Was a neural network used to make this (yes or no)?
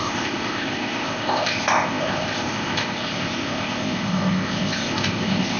yes